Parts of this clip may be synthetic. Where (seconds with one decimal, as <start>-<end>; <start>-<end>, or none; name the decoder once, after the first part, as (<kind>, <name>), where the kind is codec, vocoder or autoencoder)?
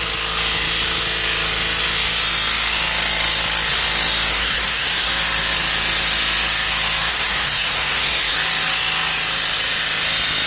4.3-5.1 (codec, SNAC); 7.1-8.3